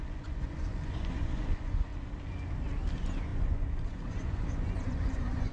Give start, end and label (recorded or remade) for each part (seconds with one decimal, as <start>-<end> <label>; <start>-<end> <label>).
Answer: 0.0-1.9 remade; 1.9-2.9 recorded; 2.9-5.5 remade